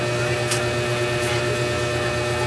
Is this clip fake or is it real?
real